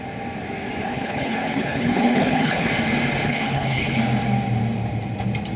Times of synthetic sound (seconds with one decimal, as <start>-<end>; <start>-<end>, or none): 0.8-2.7; 3.2-4.0